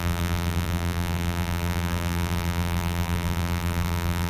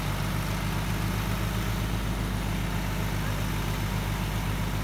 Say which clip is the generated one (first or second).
first